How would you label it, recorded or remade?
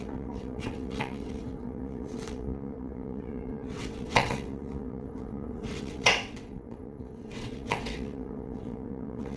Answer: remade